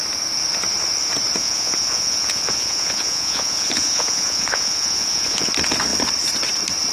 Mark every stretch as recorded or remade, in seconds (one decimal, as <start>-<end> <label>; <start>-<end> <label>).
0.0-1.4 recorded; 1.4-5.5 remade; 5.5-6.9 recorded